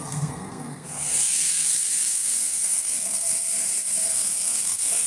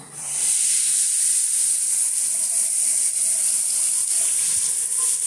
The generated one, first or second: first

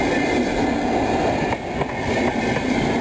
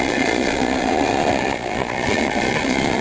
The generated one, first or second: second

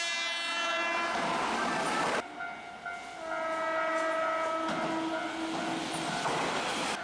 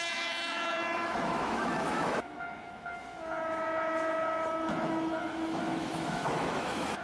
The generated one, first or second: second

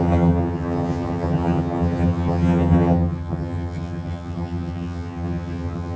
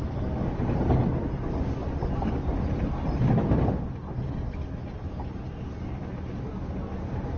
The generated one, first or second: first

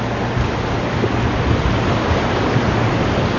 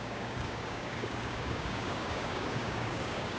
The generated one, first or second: second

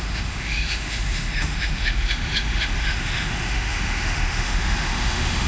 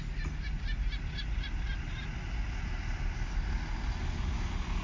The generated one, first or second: first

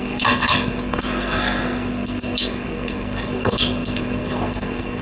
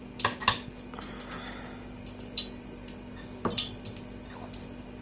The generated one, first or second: first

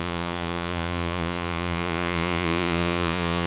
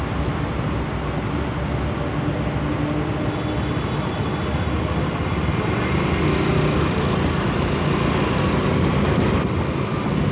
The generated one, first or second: first